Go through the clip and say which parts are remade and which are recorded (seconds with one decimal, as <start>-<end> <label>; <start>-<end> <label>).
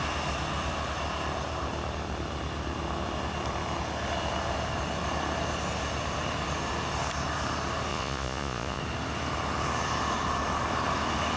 0.0-7.9 recorded; 7.9-8.8 remade; 8.8-11.4 recorded